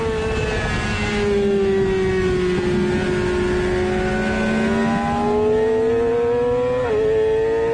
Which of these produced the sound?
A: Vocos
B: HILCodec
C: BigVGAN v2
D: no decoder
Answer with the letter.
D